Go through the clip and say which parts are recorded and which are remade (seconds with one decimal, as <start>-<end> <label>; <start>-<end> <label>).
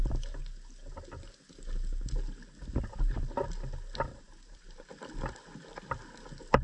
0.0-4.1 recorded; 4.1-4.9 remade; 4.9-6.6 recorded